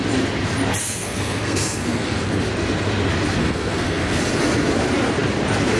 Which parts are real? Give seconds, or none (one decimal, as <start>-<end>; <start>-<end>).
0.0-0.8; 2.5-3.4; 4.2-5.8